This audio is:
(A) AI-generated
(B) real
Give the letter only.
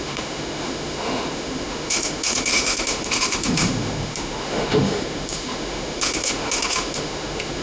A